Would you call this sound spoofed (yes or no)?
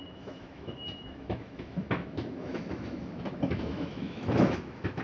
yes